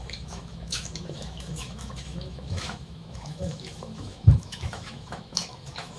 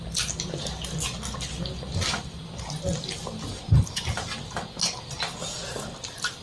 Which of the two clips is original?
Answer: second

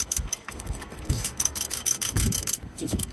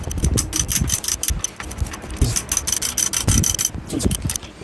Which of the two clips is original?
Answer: second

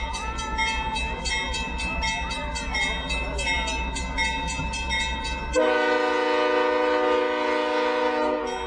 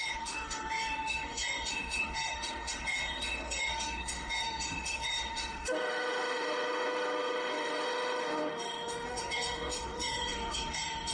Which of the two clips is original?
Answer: first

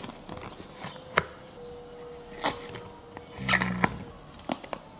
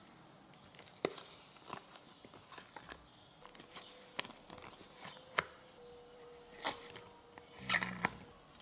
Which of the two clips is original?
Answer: first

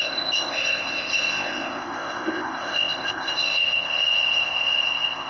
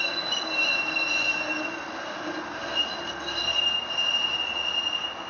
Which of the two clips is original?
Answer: second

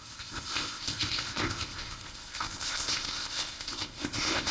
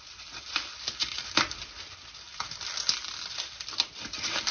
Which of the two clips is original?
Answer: second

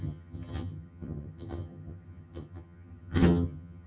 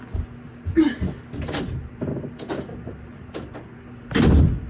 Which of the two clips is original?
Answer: second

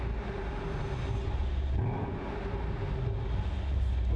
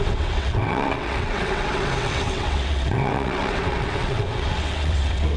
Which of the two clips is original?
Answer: first